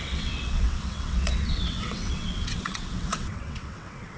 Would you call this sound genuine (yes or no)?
no